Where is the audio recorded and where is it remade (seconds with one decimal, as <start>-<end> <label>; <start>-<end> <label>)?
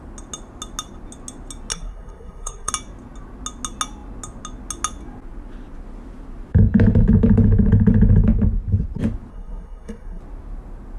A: 0.0-1.7 recorded; 1.7-2.7 remade; 2.7-9.3 recorded; 9.3-10.2 remade; 10.2-11.0 recorded